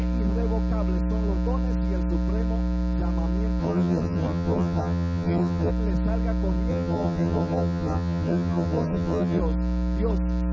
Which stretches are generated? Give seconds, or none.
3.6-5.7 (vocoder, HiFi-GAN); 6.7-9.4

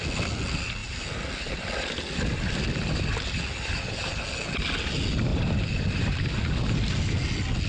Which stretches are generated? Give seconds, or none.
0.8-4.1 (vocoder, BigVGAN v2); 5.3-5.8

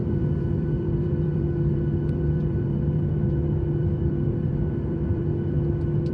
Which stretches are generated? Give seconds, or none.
0.0-5.2 (vocoder, BigVGAN v2)

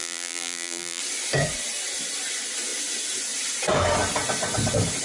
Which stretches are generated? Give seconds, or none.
0.0-1.0 (vocoder, BigVGAN v2)